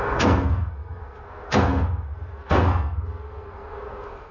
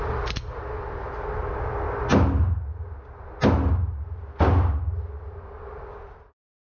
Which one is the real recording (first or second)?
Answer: second